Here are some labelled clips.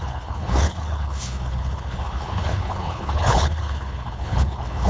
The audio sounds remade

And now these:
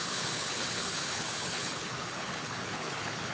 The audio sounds remade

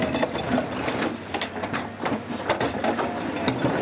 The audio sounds recorded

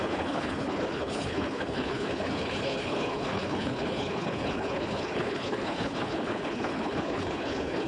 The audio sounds remade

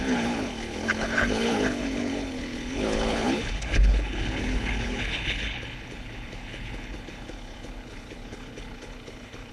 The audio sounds remade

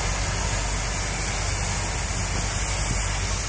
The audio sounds recorded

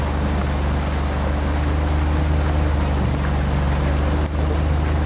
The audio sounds recorded